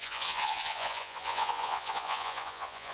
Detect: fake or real fake